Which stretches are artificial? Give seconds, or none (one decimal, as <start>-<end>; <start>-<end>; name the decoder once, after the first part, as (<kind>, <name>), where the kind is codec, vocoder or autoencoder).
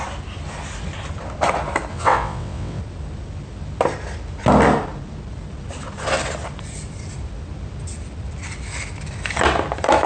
1.9-2.8 (vocoder, WaveNeXt)